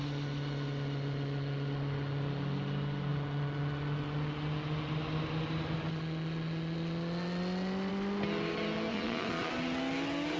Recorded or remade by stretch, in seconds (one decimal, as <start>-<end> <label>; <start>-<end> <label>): 0.0-8.9 recorded; 8.9-9.5 remade; 9.5-10.4 recorded